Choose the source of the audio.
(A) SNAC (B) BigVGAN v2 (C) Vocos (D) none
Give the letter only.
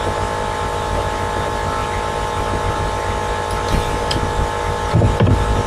D